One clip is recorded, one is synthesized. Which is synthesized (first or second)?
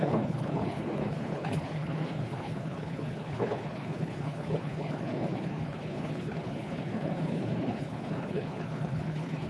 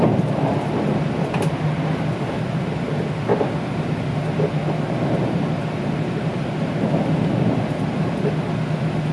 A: first